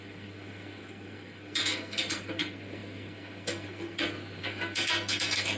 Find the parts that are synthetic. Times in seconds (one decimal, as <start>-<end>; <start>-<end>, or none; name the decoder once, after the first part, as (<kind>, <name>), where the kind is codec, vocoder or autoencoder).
0.0-5.6 (codec, SNAC)